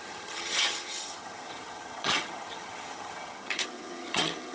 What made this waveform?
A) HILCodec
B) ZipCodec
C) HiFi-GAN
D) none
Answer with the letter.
C